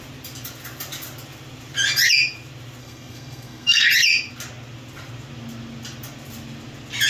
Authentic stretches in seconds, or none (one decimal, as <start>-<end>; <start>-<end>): 0.0-2.8; 3.9-7.1